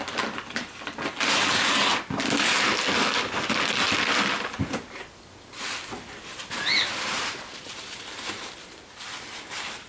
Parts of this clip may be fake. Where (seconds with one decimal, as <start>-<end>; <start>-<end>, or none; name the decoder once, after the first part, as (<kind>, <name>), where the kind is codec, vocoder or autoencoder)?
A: 6.4-9.9 (vocoder, BigVGAN v2)